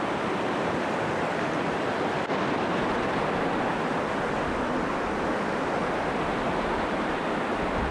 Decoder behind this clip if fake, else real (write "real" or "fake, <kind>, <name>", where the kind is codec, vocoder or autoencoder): real